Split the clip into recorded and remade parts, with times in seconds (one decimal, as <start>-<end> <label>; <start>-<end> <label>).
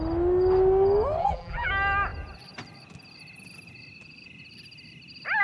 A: 0.0-1.2 recorded; 1.2-1.7 remade; 1.7-5.4 recorded